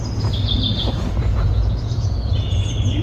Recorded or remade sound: remade